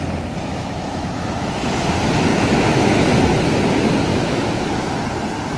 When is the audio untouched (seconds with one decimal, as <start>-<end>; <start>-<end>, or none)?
0.0-0.5; 1.5-2.3; 3.0-4.1; 4.9-5.6